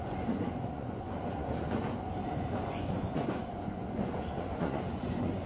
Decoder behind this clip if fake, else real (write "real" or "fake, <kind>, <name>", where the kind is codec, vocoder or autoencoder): fake, vocoder, Vocos